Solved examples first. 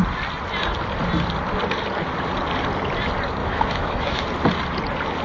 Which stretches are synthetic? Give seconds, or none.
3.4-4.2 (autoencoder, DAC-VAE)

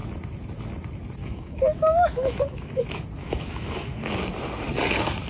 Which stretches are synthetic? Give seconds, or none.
1.2-2.8 (autoencoder, DAC-VAE); 3.2-4.0